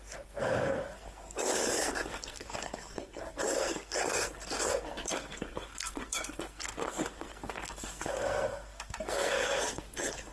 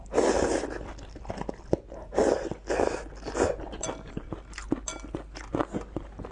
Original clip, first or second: second